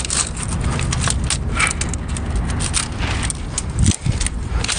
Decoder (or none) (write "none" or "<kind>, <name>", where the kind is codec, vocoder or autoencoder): none